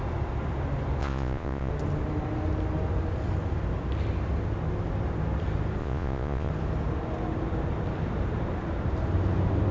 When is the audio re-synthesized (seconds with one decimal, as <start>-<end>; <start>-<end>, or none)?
1.0-1.7; 5.8-6.5